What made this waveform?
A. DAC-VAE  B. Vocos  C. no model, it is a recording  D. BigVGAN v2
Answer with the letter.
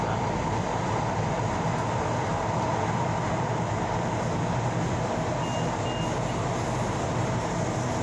C